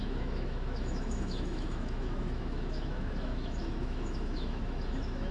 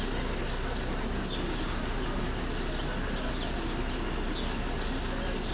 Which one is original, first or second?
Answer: second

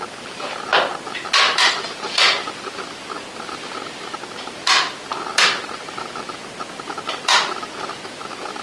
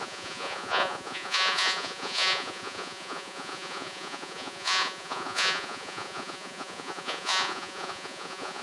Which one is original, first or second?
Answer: first